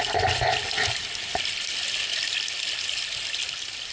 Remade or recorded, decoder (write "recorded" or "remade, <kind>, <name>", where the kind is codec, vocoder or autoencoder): recorded